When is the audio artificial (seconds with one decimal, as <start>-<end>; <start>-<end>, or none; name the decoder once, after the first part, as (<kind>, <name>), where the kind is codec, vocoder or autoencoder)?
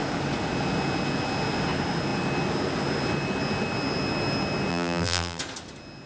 4.7-5.4 (vocoder, BigVGAN v2)